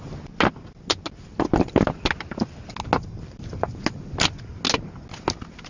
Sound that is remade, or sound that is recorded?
recorded